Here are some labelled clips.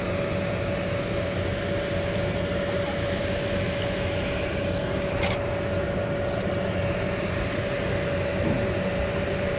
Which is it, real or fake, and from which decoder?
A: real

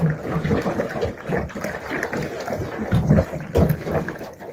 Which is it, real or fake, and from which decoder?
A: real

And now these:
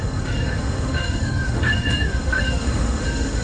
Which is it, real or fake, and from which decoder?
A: fake, autoencoder, DAC-VAE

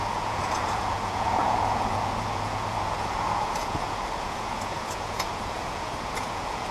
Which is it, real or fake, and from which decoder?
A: fake, vocoder, Vocos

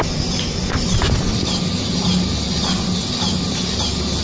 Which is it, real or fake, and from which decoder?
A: real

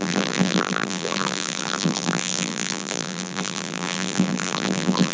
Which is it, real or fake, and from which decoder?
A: fake, vocoder, BigVGAN v2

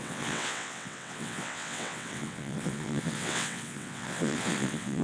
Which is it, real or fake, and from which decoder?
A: fake, vocoder, WaveNeXt